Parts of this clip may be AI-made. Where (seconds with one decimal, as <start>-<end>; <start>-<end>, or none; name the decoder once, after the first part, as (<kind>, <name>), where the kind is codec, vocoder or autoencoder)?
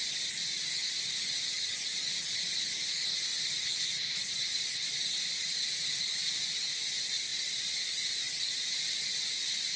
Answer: none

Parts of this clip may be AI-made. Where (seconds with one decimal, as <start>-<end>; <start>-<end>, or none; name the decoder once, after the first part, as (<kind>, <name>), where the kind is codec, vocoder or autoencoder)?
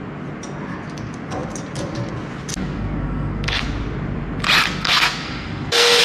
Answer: 2.6-3.6 (codec, SNAC); 4.6-6.0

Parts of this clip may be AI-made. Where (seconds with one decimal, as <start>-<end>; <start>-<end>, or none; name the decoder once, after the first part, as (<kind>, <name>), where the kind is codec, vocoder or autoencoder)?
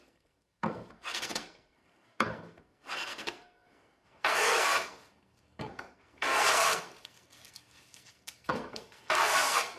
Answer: 0.0-9.8 (codec, SNAC)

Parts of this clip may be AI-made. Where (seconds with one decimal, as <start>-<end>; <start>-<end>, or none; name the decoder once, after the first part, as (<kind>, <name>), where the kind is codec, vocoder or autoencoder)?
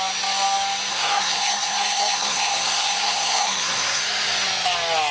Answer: 0.9-4.0 (codec, SNAC)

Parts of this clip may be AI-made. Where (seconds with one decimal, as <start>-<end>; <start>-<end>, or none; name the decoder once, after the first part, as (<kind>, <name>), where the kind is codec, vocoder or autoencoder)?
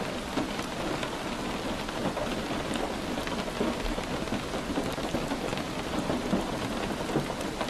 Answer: none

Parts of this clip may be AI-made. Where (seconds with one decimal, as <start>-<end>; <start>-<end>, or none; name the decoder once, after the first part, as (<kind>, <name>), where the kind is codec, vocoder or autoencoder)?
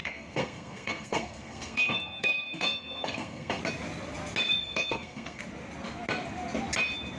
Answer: 0.0-3.6 (codec, SNAC); 4.6-5.4